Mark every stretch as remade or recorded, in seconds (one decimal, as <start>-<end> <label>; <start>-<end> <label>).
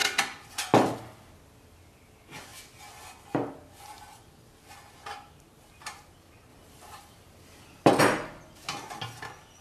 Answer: 0.0-6.5 recorded; 6.5-8.0 remade; 8.0-9.6 recorded